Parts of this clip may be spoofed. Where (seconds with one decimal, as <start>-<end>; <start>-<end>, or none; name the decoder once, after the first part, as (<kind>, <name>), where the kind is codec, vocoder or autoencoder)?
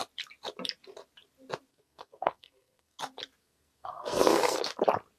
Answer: 1.7-3.0 (codec, SNAC); 3.4-4.6